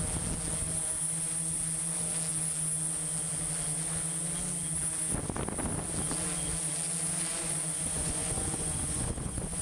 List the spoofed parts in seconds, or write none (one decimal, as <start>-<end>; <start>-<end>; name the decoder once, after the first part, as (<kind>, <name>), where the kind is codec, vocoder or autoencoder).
7.3-9.6 (vocoder, Vocos)